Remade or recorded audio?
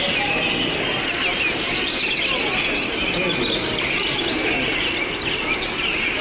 recorded